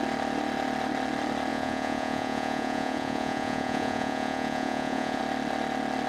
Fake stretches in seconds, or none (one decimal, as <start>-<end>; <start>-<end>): 1.5-5.2